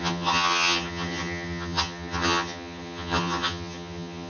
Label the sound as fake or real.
fake